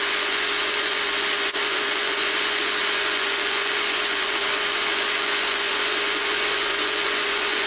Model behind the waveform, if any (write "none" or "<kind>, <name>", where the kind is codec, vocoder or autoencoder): vocoder, Vocos